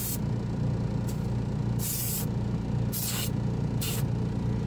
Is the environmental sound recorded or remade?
recorded